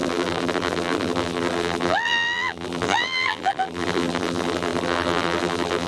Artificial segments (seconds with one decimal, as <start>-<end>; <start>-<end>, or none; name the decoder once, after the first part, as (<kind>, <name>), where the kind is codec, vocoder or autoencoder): 0.0-5.9 (vocoder, BigVGAN v2)